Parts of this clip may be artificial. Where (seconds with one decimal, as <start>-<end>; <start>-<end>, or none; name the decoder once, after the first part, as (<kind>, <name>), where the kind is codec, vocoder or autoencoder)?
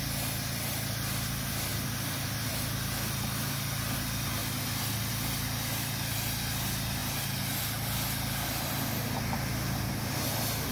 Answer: 1.7-2.6 (vocoder, BigVGAN v2)